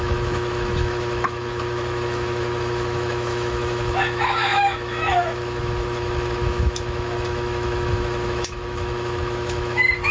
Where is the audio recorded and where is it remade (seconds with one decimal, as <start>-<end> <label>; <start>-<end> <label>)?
0.0-10.1 remade